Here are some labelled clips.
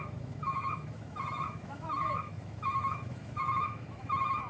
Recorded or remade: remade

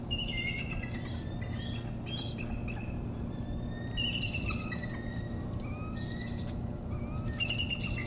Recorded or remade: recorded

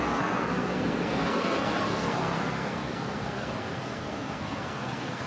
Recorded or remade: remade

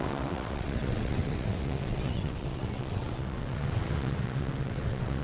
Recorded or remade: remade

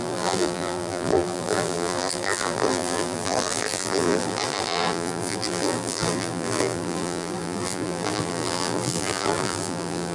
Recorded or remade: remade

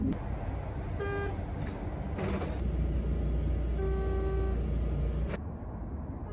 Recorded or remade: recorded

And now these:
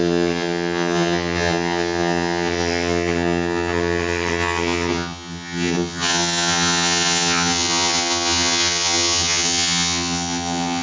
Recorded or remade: remade